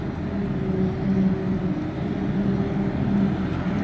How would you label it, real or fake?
real